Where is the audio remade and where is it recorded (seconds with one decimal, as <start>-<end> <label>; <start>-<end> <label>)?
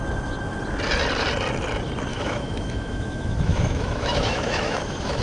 0.0-2.1 recorded; 2.1-5.2 remade